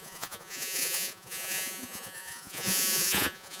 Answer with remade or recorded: remade